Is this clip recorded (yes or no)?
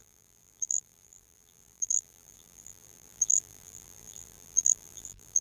no